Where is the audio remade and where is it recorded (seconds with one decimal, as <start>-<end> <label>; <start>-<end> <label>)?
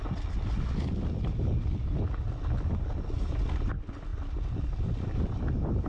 0.0-5.9 recorded